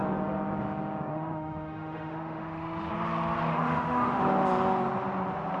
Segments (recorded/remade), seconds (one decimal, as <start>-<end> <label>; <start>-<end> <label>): 0.0-1.1 recorded; 1.1-2.9 remade; 2.9-3.5 recorded; 3.5-4.2 remade; 4.2-5.6 recorded